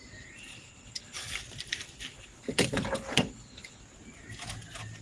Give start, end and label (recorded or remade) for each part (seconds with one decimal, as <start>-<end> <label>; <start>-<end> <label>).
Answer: 0.0-0.5 recorded; 0.5-1.4 remade; 1.4-2.1 recorded; 2.1-3.8 remade; 3.8-5.0 recorded